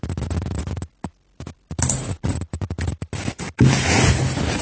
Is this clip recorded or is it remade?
recorded